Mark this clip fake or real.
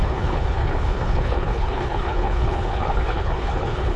fake